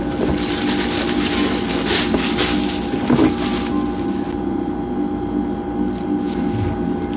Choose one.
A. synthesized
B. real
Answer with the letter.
B